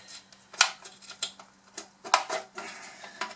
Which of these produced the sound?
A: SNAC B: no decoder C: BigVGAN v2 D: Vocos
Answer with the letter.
B